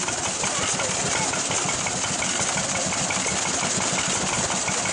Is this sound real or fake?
real